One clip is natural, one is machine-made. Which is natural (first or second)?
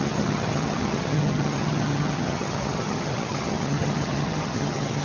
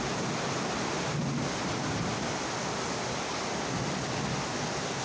second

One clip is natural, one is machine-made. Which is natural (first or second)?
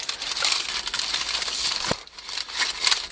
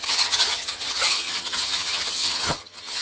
first